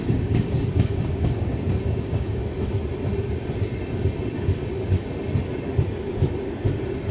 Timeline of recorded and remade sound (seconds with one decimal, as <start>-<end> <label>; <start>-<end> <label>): 0.0-2.4 remade; 2.4-7.1 recorded